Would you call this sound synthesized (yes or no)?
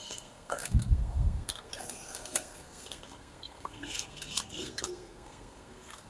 yes